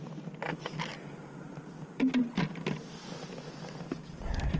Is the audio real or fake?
real